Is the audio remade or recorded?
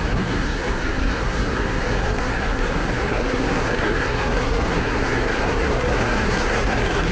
remade